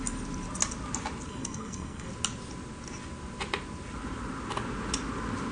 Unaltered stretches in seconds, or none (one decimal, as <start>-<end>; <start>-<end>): 0.0-1.3; 2.1-5.5